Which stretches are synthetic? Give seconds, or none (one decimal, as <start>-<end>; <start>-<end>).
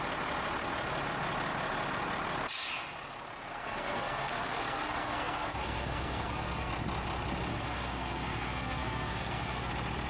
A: 3.5-6.7; 7.5-9.7